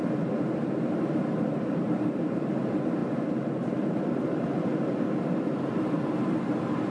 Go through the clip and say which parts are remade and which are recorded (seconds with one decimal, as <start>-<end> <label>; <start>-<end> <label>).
0.0-0.8 recorded; 0.8-6.9 remade